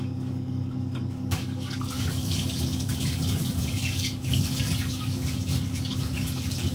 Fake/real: fake